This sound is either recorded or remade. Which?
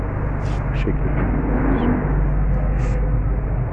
recorded